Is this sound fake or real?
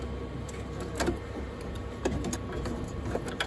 real